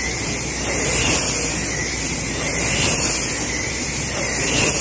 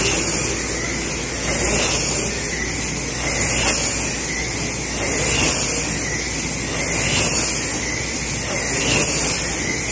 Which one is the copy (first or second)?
first